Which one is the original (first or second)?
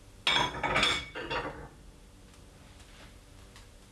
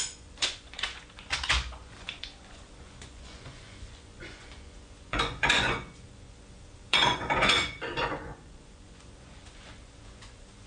first